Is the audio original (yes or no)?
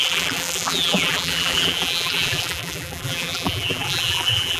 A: no